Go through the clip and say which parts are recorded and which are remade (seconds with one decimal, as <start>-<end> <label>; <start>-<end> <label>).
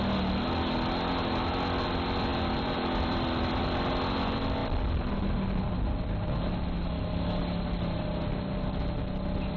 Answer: 0.0-2.3 recorded; 2.3-3.6 remade; 3.6-9.6 recorded